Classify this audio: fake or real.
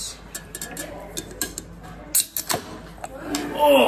real